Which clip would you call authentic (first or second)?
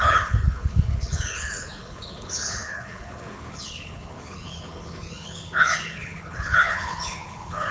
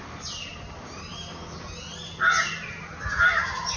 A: second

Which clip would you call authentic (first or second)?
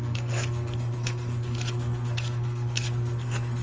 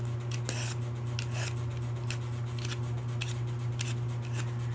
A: second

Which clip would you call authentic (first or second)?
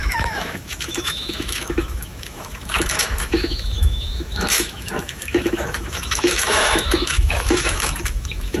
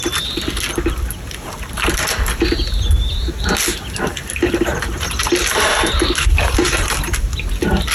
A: second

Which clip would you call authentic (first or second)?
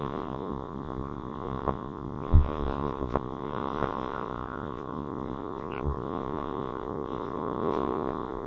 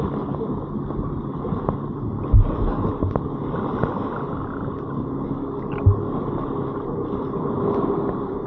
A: second